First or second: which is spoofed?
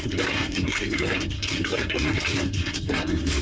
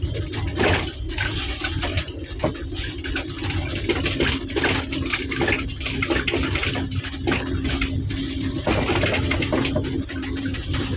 first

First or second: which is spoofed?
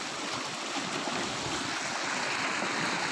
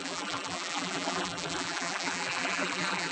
second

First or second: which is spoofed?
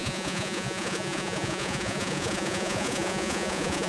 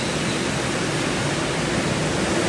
first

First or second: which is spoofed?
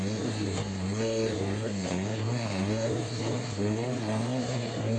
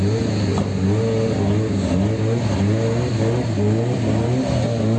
first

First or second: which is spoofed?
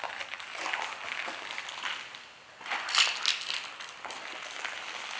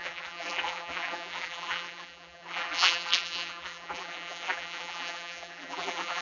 second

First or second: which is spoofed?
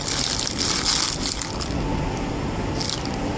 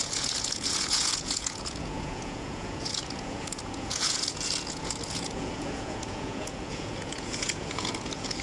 second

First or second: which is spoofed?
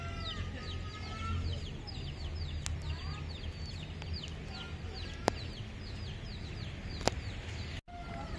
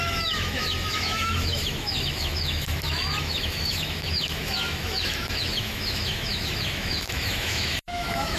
second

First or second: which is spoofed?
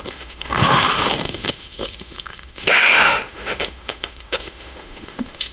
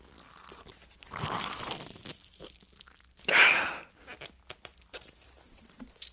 first